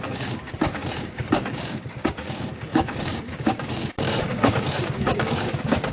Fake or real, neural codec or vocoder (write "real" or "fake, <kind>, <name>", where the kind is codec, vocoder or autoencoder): fake, codec, DAC